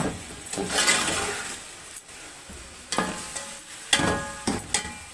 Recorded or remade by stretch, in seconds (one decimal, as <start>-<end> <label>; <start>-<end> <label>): 0.0-0.7 remade; 0.7-5.1 recorded